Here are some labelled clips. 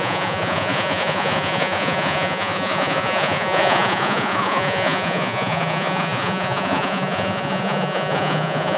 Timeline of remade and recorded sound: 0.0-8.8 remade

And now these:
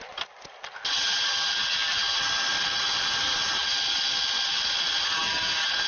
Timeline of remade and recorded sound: 0.0-5.9 recorded

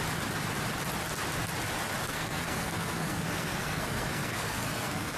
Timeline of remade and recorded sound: 0.0-2.0 recorded; 2.0-5.2 remade

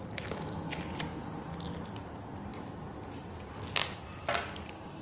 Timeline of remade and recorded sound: 0.0-5.0 recorded

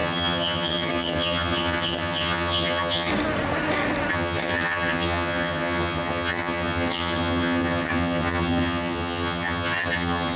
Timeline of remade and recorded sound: 0.0-3.1 remade; 3.1-4.1 recorded; 4.1-10.4 remade

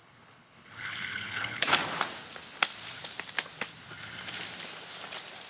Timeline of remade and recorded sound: 0.0-1.8 remade; 1.8-5.5 recorded

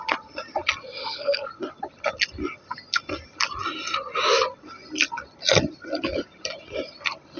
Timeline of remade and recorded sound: 0.0-1.0 recorded; 1.0-1.5 remade; 1.5-7.4 recorded